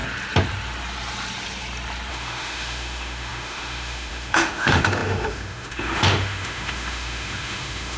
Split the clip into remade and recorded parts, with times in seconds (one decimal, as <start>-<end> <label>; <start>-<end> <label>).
0.0-2.1 recorded; 2.1-8.0 remade